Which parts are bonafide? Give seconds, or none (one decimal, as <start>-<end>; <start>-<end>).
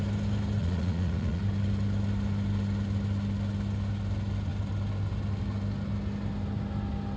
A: 0.0-0.6; 1.4-7.2